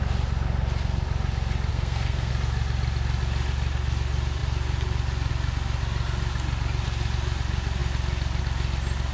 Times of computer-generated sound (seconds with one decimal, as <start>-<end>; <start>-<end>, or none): 1.7-2.3